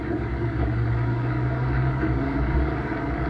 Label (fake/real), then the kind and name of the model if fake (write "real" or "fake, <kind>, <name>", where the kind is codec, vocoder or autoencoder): fake, codec, DAC